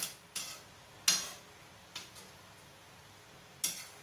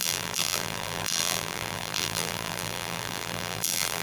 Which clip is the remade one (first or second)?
second